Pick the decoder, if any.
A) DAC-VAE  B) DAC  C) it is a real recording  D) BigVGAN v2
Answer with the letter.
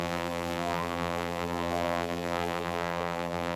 D